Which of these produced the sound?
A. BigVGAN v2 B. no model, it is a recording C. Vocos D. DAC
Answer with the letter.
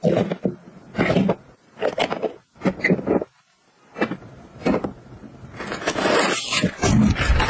B